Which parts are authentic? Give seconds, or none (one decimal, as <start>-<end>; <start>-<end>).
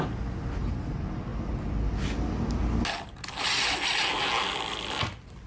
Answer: 0.0-5.5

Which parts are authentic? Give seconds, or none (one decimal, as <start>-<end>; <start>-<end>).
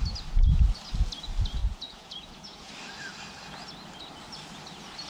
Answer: 0.0-1.6; 2.7-5.1